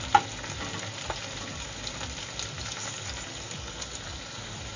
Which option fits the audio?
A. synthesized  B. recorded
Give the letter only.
B